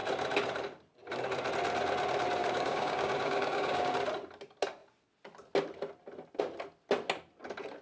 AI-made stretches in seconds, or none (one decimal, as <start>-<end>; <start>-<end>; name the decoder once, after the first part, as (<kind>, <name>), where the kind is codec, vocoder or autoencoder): 2.4-3.9 (codec, DAC)